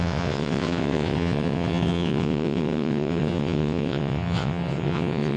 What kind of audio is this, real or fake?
fake